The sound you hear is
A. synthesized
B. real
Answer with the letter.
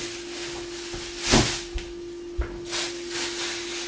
B